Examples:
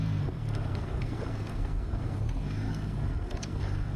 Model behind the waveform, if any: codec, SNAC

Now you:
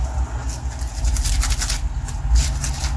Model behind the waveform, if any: none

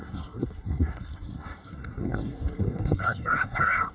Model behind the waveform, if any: codec, SNAC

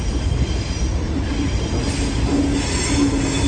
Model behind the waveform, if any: none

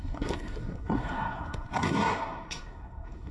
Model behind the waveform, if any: codec, SNAC